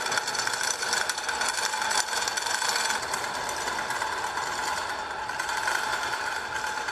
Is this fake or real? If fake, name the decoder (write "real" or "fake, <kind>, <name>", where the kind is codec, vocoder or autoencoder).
real